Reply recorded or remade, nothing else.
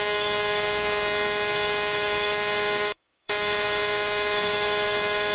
remade